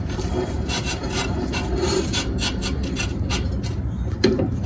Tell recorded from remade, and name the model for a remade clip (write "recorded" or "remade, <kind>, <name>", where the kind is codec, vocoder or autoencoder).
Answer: remade, vocoder, BigVGAN v2